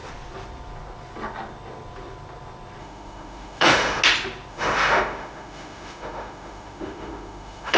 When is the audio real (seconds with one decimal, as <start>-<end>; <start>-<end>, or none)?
0.0-2.8; 4.0-4.5